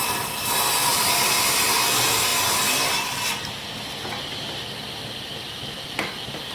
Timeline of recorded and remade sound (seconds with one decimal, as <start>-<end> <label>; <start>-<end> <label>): 0.0-0.9 recorded; 0.9-1.6 remade; 1.6-2.3 recorded; 2.3-3.5 remade; 3.5-6.5 recorded